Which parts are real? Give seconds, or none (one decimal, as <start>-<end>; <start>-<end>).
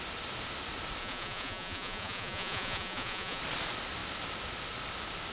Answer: 0.0-1.0; 3.4-5.3